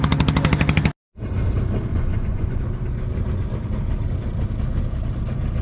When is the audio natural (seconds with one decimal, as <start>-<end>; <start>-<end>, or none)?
0.0-1.9; 2.6-5.6